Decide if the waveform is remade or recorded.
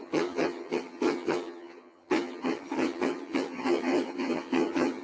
remade